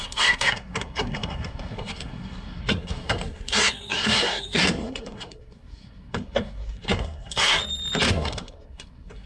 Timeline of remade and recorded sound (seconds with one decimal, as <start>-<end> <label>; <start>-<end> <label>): 0.0-7.6 remade; 7.6-8.1 recorded; 8.1-9.3 remade